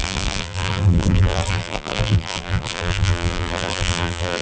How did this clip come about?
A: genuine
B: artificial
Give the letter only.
B